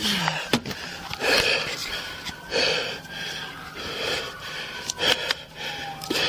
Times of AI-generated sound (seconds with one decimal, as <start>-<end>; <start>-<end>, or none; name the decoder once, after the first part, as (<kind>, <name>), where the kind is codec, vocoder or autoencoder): none

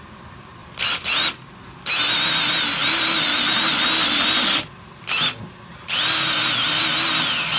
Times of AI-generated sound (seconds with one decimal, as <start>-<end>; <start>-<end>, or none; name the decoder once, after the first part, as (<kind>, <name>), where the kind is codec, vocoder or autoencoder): 0.6-1.2 (vocoder, BigVGAN v2); 2.8-6.8